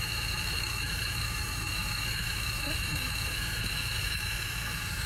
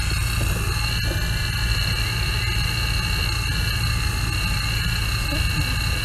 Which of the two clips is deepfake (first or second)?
first